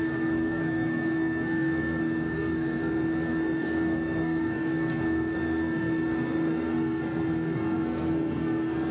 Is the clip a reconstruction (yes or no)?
yes